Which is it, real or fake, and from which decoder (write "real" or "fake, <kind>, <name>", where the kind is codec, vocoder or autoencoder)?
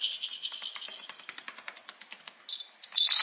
real